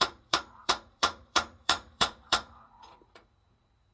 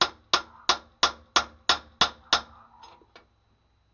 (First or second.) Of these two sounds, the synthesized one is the first